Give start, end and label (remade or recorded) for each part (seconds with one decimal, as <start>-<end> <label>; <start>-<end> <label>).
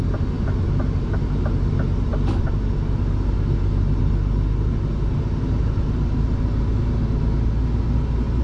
0.0-8.4 recorded